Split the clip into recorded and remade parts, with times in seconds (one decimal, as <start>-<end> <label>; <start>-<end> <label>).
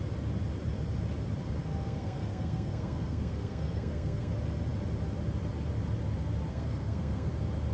0.0-1.6 recorded; 1.6-4.3 remade; 4.3-6.5 recorded; 6.5-7.3 remade; 7.3-7.7 recorded